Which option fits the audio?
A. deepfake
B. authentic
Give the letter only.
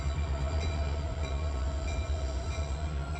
A